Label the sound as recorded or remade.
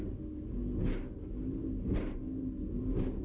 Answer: recorded